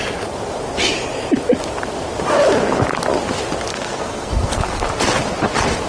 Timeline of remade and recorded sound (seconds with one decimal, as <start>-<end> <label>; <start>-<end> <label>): 0.0-3.7 recorded; 3.7-4.8 remade; 4.8-5.9 recorded